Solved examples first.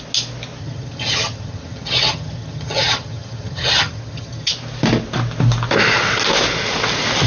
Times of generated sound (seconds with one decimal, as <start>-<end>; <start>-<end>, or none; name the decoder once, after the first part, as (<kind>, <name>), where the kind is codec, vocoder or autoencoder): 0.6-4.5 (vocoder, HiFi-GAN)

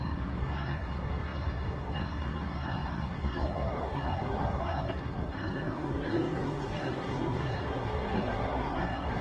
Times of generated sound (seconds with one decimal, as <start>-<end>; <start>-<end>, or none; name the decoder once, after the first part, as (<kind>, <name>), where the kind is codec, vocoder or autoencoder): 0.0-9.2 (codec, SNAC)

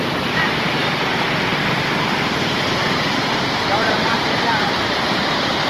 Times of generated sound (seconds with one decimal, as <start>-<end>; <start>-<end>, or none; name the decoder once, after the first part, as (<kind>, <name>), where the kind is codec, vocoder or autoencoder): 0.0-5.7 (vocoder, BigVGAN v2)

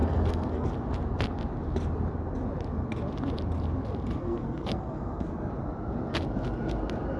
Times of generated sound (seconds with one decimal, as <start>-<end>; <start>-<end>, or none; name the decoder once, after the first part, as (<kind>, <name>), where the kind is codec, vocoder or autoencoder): 0.0-0.7 (codec, SNAC); 4.2-5.5

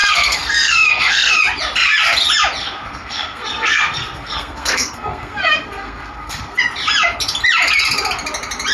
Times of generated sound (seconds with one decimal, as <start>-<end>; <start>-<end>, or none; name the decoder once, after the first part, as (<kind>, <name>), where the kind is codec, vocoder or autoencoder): 0.0-1.3 (codec, SNAC); 2.6-6.6

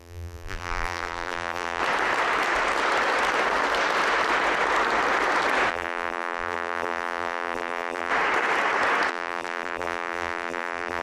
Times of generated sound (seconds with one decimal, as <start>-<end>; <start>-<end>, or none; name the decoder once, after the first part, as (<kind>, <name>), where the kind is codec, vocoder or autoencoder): 0.0-1.8 (vocoder, BigVGAN v2); 5.7-8.1; 9.1-11.0

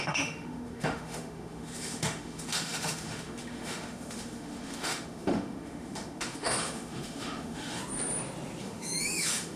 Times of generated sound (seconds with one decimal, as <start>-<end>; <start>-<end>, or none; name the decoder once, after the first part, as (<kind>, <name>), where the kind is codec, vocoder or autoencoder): 0.0-7.8 (autoencoder, DAC-VAE); 8.6-9.6